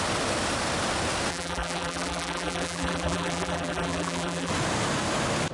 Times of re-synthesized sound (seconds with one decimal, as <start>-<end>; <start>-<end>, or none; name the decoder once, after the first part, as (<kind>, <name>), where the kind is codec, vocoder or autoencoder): 1.3-4.5 (vocoder, BigVGAN v2)